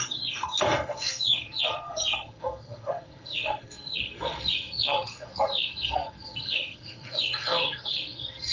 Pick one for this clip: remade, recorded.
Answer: remade